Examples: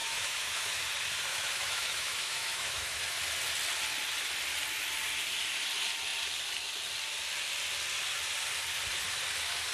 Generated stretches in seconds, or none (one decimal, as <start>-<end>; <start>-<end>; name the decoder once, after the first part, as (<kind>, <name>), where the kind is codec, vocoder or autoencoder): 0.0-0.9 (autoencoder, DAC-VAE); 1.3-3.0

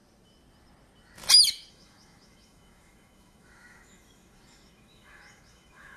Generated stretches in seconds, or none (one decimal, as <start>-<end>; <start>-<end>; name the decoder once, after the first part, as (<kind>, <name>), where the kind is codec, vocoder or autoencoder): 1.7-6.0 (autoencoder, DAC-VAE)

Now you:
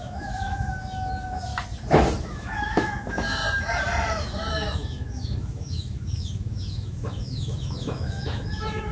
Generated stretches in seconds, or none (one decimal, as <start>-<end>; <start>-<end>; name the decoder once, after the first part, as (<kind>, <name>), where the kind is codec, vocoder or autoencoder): 0.0-1.5 (autoencoder, DAC-VAE); 2.2-3.4; 4.5-8.9

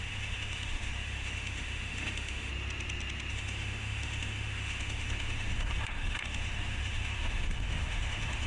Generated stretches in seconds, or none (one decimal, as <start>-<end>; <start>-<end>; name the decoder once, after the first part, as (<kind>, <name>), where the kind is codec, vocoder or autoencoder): 0.0-2.5 (autoencoder, DAC-VAE); 3.3-8.5

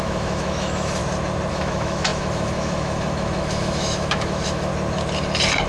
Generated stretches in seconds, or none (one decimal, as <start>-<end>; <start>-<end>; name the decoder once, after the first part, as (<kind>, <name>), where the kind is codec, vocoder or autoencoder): 0.0-1.0 (autoencoder, DAC-VAE); 1.5-4.7

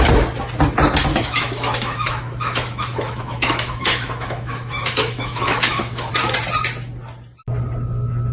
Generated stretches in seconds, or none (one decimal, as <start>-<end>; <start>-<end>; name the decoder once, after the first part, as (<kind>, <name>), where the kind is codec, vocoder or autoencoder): 1.1-6.1 (autoencoder, DAC-VAE)